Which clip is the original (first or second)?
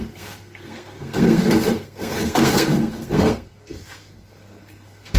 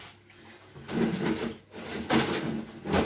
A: second